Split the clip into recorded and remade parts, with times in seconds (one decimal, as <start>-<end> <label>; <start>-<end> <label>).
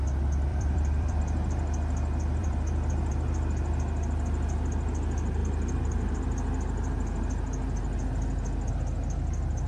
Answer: 0.0-0.5 recorded; 0.5-1.2 remade; 1.2-2.4 recorded; 2.4-3.1 remade; 3.1-9.7 recorded